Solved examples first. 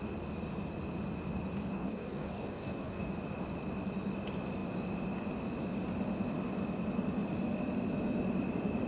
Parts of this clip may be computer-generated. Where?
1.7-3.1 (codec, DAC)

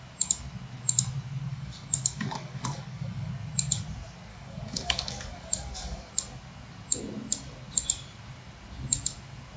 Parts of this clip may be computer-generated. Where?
1.5-3.3 (codec, DAC); 4.3-6.1

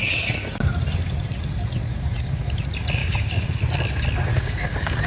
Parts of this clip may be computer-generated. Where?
1.9-2.6 (codec, DAC); 3.0-3.6; 4.3-5.1

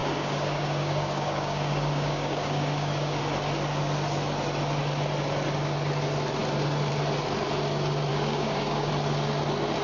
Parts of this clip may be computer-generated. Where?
0.0-3.2 (codec, DAC); 8.1-8.9

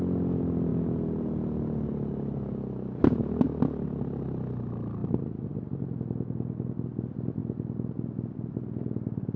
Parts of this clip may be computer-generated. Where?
none

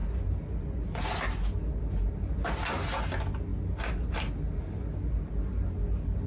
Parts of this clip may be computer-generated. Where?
none

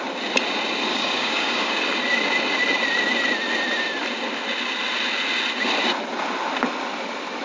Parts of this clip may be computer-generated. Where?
0.9-1.7 (codec, DAC)